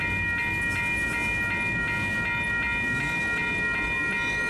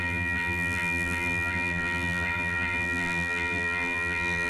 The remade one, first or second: second